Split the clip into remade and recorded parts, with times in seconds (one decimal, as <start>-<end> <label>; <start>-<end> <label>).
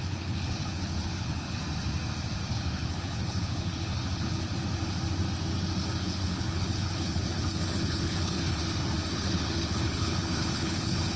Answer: 0.0-1.6 remade; 1.6-2.5 recorded; 2.5-4.5 remade; 4.5-6.0 recorded; 6.0-8.6 remade; 8.6-9.1 recorded; 9.1-11.2 remade